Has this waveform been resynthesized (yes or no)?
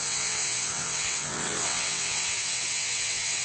yes